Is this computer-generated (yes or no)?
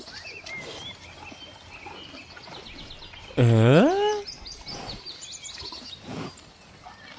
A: no